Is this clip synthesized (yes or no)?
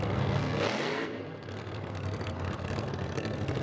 yes